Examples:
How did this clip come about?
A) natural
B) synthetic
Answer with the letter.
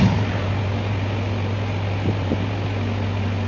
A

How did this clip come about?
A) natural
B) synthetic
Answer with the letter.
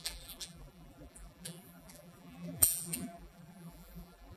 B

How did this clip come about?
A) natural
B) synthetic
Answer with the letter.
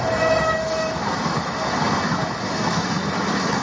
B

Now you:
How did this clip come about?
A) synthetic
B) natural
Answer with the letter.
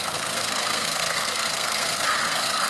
A